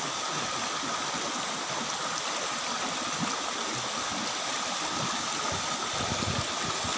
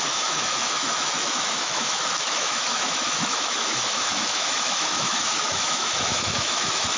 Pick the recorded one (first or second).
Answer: first